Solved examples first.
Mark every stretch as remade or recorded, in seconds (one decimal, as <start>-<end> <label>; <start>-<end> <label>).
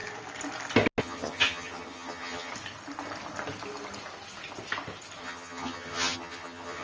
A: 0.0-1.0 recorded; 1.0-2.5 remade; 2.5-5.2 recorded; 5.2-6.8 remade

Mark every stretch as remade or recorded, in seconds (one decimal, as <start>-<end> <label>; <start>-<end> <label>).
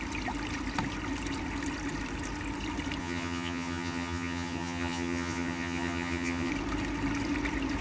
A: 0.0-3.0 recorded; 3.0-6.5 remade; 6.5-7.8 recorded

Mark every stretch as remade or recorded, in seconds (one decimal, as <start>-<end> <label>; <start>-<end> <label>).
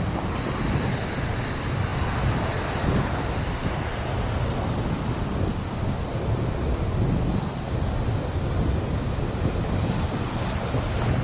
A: 0.0-11.2 recorded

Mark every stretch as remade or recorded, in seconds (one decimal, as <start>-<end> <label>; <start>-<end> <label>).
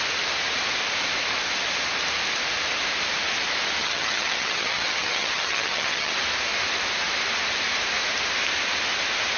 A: 0.0-3.8 recorded; 3.8-6.1 remade; 6.1-9.4 recorded